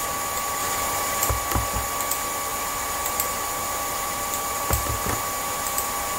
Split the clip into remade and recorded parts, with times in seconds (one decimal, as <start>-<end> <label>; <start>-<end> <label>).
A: 0.0-0.6 recorded; 0.6-1.3 remade; 1.3-2.5 recorded; 2.5-6.2 remade